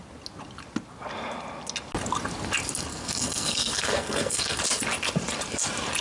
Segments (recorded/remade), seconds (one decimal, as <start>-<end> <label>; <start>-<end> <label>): 0.0-2.9 recorded; 2.9-4.6 remade; 4.6-6.0 recorded